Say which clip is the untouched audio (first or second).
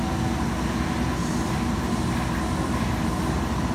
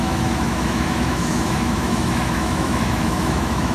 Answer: first